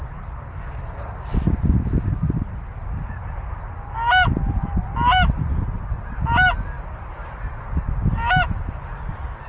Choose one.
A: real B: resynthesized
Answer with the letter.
A